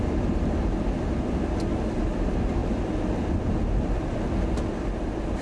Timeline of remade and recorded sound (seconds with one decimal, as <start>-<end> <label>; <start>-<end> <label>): 0.0-5.4 recorded